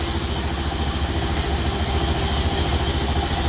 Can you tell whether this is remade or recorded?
recorded